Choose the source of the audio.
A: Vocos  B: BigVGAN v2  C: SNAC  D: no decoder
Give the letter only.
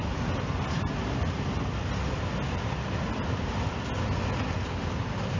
D